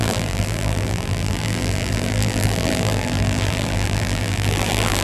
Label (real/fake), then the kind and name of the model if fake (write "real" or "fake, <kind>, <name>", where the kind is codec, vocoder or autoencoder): fake, vocoder, BigVGAN v2